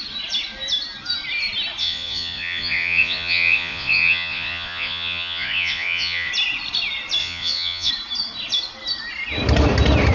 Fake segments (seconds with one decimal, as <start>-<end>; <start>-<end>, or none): 1.8-6.3; 7.2-7.9